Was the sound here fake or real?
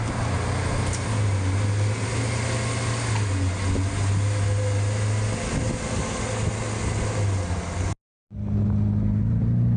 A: real